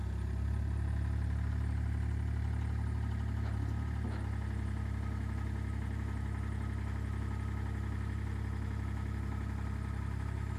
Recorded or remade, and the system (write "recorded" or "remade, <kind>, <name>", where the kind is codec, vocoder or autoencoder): recorded